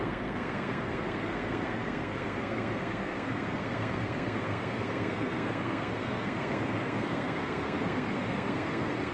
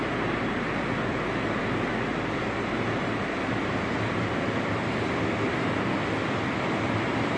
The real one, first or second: second